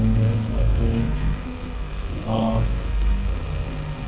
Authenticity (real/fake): fake